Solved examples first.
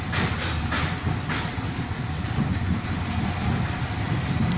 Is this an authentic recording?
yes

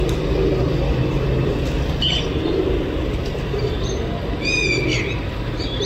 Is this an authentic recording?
yes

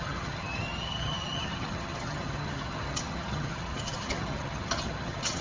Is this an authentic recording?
no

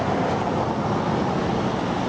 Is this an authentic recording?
yes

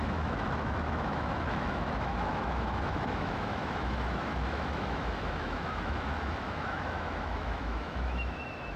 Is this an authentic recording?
no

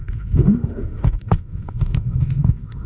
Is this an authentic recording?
no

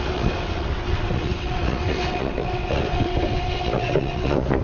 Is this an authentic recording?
no